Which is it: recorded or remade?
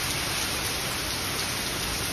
recorded